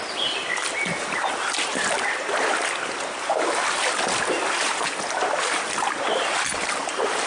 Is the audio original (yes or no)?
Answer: yes